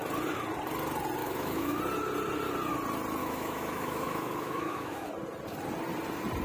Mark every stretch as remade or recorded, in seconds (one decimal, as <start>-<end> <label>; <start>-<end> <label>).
0.0-1.2 recorded; 1.2-1.8 remade; 1.8-3.2 recorded; 3.2-5.1 remade; 5.1-6.4 recorded